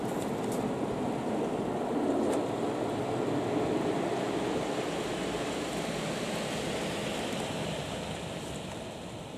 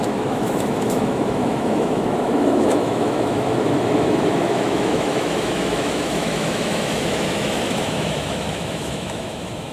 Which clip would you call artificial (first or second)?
second